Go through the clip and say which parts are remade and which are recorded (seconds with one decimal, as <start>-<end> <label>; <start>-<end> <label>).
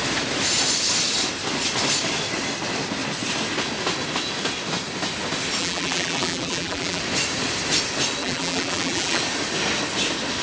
0.0-5.6 recorded; 5.6-7.0 remade; 7.0-8.2 recorded; 8.2-9.2 remade; 9.2-10.4 recorded